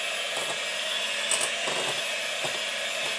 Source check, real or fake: real